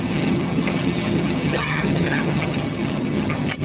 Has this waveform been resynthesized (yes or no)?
yes